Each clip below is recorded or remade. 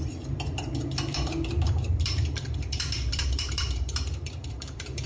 remade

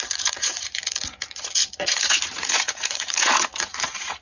remade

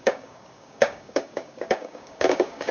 remade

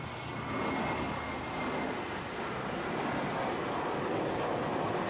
recorded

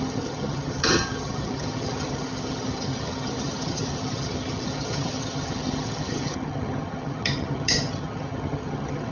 remade